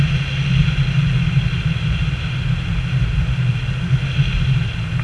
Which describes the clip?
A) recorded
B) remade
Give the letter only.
A